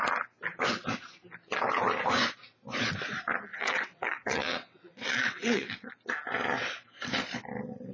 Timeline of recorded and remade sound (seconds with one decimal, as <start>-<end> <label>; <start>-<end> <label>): 0.0-3.5 recorded; 3.5-5.9 remade; 5.9-7.9 recorded